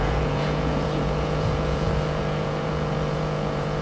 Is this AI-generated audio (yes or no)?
yes